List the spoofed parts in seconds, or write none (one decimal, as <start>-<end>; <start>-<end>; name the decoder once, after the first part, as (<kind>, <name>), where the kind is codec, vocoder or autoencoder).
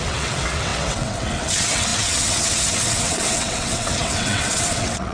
0.0-5.1 (vocoder, WaveNeXt)